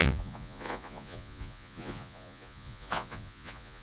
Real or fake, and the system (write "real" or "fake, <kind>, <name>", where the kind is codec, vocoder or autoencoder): fake, vocoder, Vocos